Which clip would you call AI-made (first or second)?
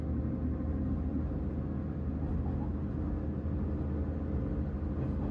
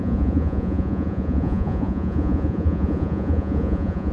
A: second